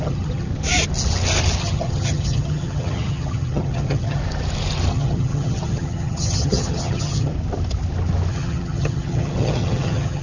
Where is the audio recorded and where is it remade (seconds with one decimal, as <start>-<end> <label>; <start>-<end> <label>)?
0.0-0.5 remade; 0.5-1.6 recorded; 1.6-4.2 remade; 4.2-4.9 recorded; 4.9-7.3 remade; 7.3-8.3 recorded; 8.3-10.2 remade